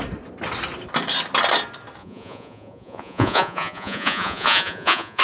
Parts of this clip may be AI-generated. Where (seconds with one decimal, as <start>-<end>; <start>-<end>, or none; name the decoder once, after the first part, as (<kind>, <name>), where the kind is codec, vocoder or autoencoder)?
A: 2.0-5.2 (vocoder, Vocos)